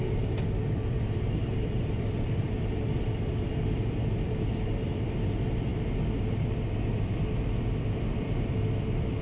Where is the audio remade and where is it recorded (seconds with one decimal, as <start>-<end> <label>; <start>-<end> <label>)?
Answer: 0.0-5.7 remade; 5.7-6.9 recorded; 6.9-9.2 remade